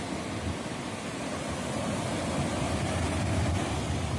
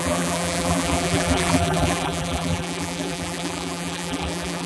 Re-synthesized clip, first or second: second